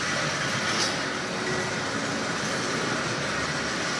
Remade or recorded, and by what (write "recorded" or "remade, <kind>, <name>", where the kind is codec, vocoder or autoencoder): recorded